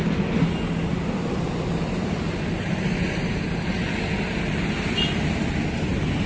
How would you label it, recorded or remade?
recorded